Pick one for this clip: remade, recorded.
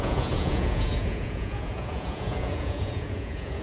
remade